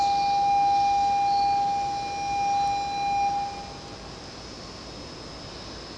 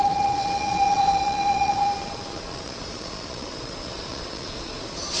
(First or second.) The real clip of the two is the first